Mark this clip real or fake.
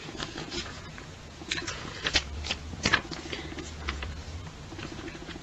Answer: fake